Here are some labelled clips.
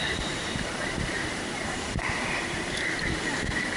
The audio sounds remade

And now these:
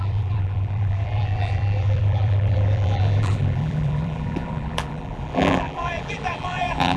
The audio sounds remade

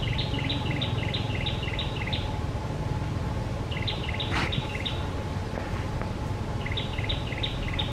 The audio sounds recorded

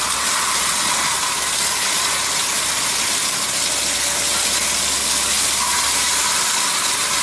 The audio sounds recorded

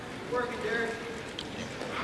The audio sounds remade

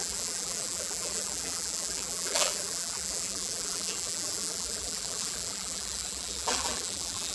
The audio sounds remade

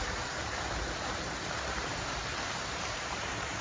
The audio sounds remade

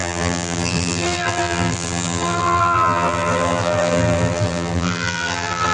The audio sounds remade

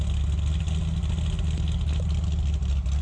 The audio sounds recorded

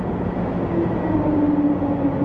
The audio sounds recorded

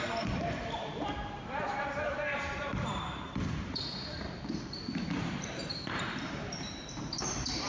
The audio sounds remade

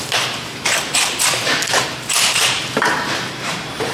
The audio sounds remade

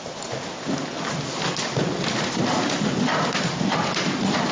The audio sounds recorded